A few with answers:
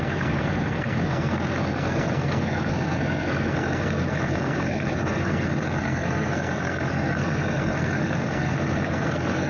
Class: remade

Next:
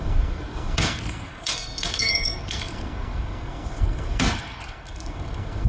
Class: remade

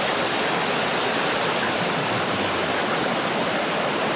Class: recorded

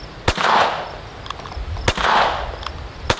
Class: recorded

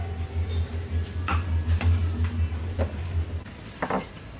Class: recorded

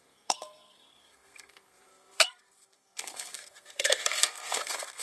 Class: remade